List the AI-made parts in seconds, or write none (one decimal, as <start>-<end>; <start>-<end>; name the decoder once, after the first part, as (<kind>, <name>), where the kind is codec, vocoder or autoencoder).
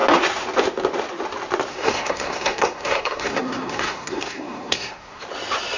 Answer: 1.7-5.2 (codec, SNAC)